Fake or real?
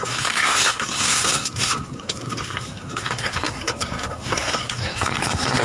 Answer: fake